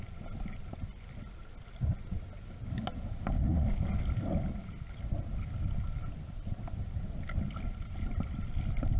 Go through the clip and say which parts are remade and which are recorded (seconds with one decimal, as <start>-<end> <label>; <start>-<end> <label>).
0.0-9.0 recorded